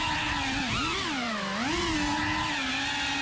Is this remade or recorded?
recorded